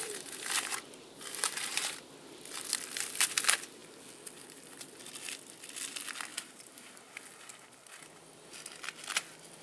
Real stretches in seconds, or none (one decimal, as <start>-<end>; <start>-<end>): 2.0-6.3; 7.1-9.6